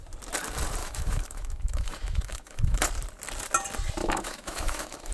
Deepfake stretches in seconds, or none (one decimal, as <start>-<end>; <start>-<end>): 0.8-2.8; 4.0-5.1